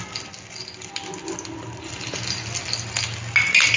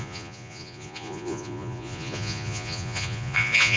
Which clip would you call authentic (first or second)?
first